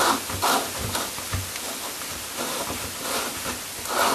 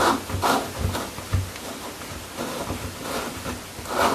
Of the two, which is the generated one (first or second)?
first